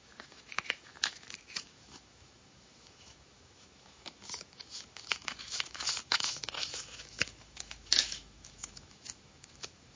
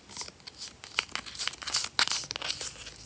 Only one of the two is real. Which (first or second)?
second